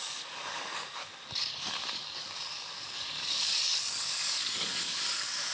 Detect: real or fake fake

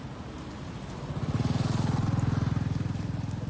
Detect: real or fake real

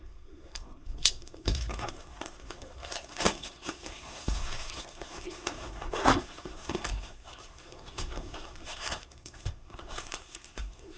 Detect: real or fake fake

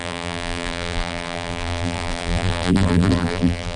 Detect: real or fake fake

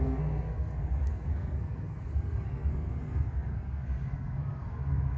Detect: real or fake fake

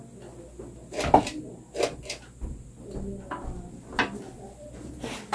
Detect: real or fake real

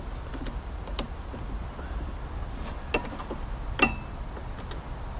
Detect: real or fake real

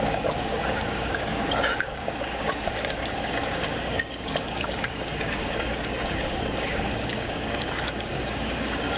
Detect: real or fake fake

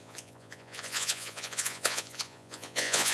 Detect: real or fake fake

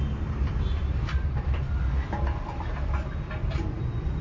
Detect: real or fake fake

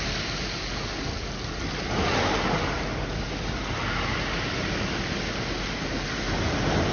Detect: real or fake real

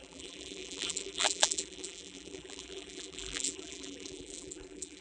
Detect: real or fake fake